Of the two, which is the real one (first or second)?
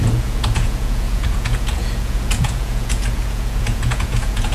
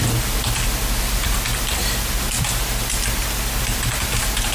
second